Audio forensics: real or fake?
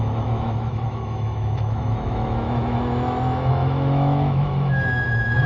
fake